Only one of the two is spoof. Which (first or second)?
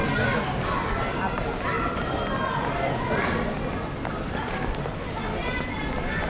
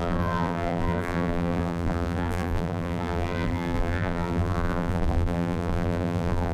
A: second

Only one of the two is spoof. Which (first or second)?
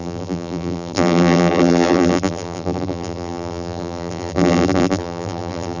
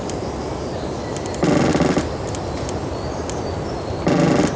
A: first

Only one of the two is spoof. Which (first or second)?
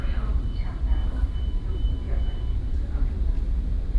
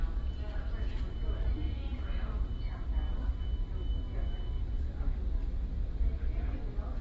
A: first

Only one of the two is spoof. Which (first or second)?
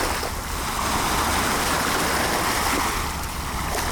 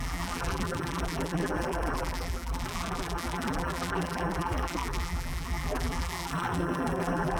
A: second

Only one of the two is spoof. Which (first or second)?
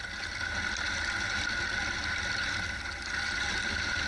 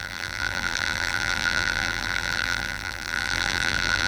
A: second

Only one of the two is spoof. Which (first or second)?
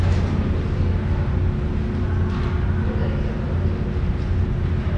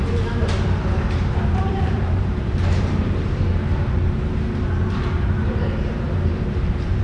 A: second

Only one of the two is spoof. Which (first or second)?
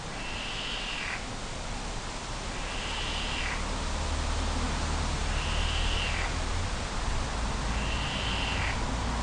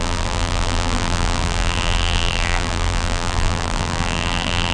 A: second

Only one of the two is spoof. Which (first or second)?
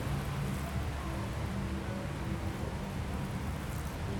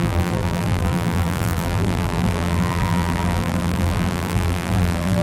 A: second